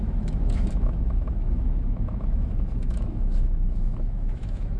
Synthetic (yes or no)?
yes